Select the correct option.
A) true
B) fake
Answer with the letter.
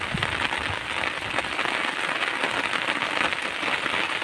A